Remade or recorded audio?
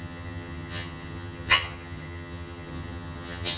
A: remade